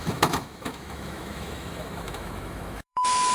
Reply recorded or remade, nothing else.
remade